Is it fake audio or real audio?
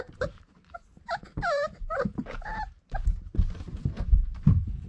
fake